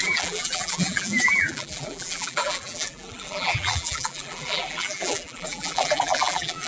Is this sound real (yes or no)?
no